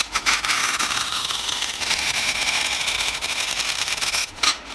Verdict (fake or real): fake